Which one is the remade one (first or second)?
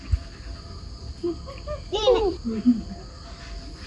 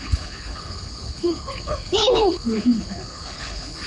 second